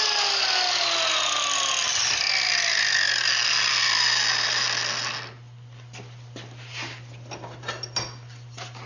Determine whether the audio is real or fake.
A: real